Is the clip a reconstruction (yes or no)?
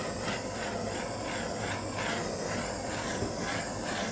no